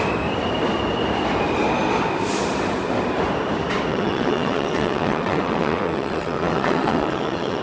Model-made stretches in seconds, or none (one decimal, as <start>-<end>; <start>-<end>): 3.9-7.6

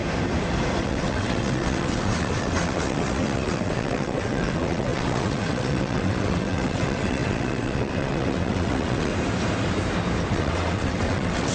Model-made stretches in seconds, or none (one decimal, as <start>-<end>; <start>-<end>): 0.8-9.1; 10.3-11.5

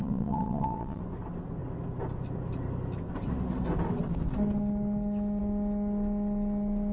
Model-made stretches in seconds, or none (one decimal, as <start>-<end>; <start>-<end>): 0.0-1.0

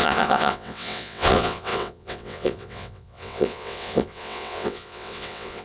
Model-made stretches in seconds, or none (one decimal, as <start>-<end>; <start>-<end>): 0.0-5.6

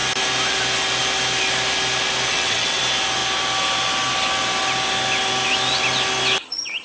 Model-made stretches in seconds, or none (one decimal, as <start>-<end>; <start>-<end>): 2.3-2.8

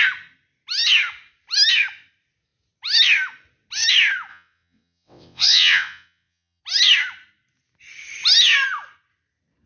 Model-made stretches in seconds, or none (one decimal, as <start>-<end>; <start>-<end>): 4.3-6.6

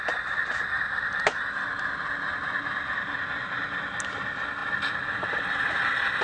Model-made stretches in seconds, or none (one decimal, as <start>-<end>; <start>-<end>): none

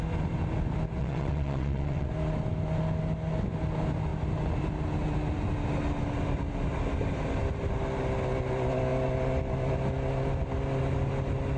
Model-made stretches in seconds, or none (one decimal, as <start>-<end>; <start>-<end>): 1.0-2.1